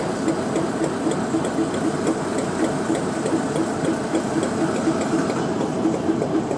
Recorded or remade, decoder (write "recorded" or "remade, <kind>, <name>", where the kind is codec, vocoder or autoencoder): recorded